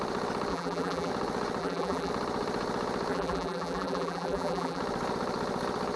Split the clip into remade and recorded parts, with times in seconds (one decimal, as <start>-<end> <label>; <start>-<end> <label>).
0.0-0.5 recorded; 0.5-1.1 remade; 1.1-1.6 recorded; 1.6-2.1 remade; 2.1-3.1 recorded; 3.1-4.8 remade; 4.8-6.0 recorded